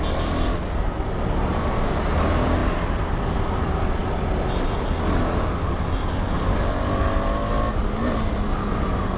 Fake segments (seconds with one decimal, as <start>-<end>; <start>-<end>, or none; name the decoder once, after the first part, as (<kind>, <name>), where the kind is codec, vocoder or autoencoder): none